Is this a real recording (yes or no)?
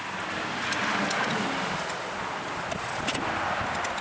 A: yes